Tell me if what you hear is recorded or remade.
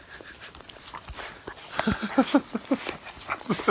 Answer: recorded